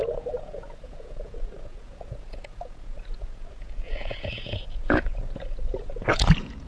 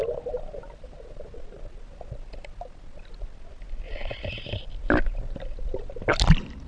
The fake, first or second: first